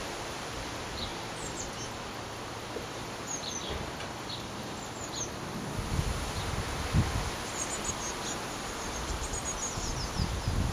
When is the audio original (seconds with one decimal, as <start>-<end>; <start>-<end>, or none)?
0.0-10.7

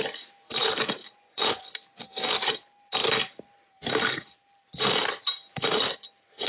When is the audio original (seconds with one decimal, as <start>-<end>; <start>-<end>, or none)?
0.0-1.0; 1.7-6.5

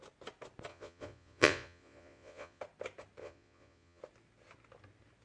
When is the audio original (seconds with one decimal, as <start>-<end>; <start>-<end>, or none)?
0.0-0.7; 2.6-3.2; 4.0-5.2

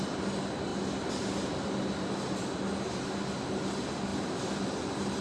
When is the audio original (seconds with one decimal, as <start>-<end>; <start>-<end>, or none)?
0.0-5.2

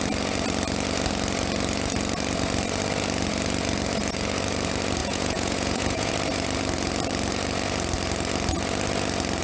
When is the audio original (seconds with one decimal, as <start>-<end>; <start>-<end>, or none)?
0.0-5.0; 6.1-9.4

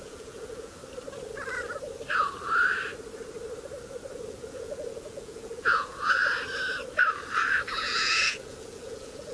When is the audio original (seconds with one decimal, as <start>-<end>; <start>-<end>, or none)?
0.8-4.3; 6.2-7.8

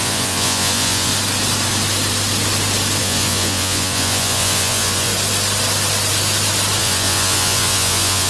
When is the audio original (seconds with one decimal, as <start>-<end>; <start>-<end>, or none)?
1.1-3.0; 5.1-6.8